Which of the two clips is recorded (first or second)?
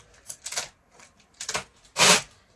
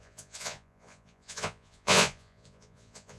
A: first